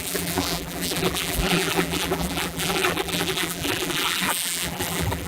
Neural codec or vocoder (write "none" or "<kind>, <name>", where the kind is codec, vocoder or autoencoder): vocoder, BigVGAN v2